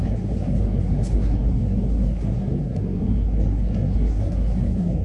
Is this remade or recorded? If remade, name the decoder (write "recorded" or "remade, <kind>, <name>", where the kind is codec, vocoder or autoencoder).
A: remade, codec, SNAC